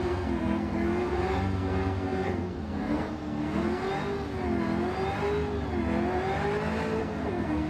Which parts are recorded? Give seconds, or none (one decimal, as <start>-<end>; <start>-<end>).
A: 3.9-7.0